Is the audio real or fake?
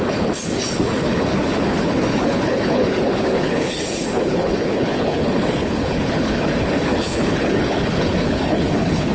fake